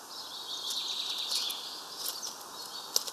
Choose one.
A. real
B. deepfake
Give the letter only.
A